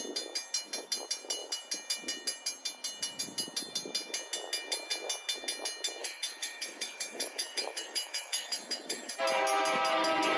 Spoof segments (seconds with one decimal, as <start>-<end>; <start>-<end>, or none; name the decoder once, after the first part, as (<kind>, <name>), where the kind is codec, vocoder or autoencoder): 6.0-9.1 (autoencoder, DAC-VAE)